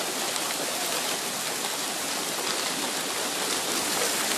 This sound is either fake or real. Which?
real